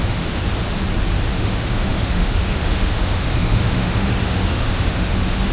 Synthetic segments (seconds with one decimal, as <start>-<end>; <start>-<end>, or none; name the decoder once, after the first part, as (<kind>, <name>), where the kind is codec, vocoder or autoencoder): 0.0-0.5 (autoencoder, DAC-VAE); 1.3-5.5